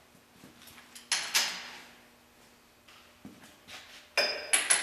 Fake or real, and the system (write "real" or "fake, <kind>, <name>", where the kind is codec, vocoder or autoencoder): real